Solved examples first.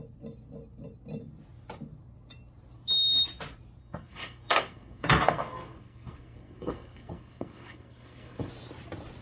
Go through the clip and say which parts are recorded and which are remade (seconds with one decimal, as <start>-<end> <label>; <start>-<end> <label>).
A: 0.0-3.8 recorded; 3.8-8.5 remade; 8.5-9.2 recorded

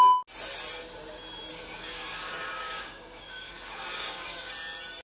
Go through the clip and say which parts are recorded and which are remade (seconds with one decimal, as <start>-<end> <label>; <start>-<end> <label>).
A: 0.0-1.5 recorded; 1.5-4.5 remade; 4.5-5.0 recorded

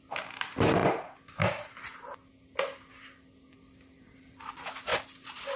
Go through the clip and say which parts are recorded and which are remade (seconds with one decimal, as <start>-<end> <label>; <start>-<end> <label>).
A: 0.0-0.8 remade; 0.8-3.5 recorded; 3.5-4.9 remade; 4.9-5.6 recorded

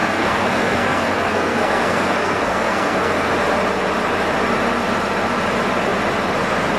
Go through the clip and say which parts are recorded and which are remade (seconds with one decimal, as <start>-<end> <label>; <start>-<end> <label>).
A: 0.0-3.3 remade; 3.3-6.8 recorded

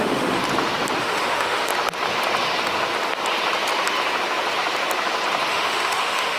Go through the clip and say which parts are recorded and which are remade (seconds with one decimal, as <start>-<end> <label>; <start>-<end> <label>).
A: 0.0-0.4 remade; 0.4-1.0 recorded; 1.0-1.7 remade; 1.7-5.5 recorded; 5.5-6.4 remade

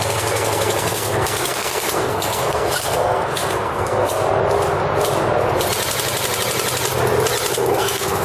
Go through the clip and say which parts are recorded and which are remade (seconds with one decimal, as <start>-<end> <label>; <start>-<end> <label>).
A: 0.0-4.2 remade; 4.2-7.5 recorded; 7.5-8.2 remade